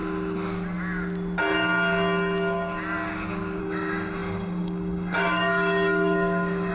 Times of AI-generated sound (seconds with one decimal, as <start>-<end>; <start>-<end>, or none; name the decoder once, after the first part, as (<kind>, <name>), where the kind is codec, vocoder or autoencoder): 3.6-6.7 (codec, DAC)